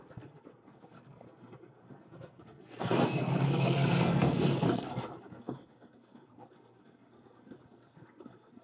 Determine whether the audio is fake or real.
fake